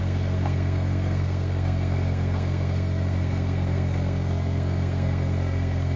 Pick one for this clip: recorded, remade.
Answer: remade